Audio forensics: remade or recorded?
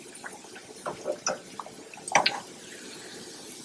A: recorded